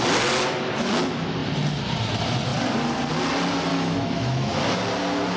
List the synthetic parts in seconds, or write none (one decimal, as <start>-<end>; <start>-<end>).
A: 3.7-4.8